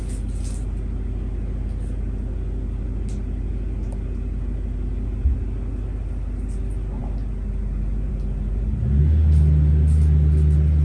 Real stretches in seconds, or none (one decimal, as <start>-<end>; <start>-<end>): 0.0-10.8